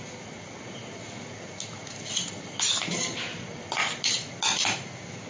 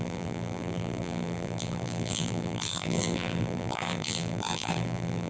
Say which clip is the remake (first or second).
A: second